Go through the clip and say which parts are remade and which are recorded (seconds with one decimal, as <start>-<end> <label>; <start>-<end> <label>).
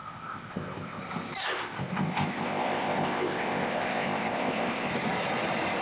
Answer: 0.0-1.0 remade; 1.0-1.4 recorded; 1.4-4.9 remade; 4.9-5.8 recorded